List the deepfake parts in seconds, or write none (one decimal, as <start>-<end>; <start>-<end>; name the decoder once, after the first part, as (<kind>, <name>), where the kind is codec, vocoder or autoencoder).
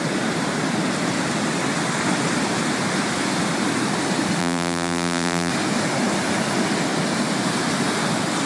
4.4-5.5 (vocoder, BigVGAN v2)